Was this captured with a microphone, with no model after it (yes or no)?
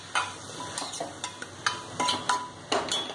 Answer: yes